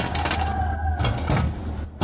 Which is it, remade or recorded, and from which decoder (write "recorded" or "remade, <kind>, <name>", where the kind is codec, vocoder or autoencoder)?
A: recorded